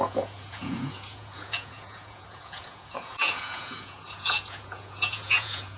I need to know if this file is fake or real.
fake